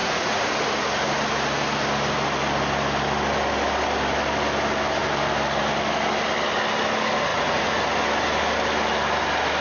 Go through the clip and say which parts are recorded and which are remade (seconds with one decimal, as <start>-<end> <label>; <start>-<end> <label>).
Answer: 0.0-0.5 remade; 0.5-7.3 recorded; 7.3-7.8 remade; 7.8-9.6 recorded